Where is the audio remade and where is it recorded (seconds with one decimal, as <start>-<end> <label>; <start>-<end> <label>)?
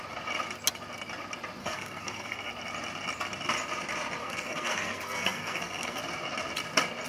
0.0-1.6 recorded; 1.6-2.5 remade; 2.5-4.2 recorded; 4.2-6.0 remade; 6.0-7.1 recorded